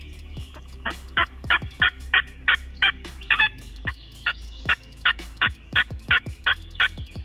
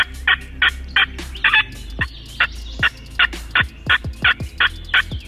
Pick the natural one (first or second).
second